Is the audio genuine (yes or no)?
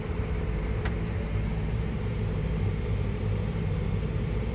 no